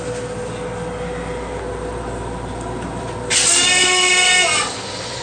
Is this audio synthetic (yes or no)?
no